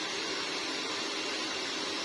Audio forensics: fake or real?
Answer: real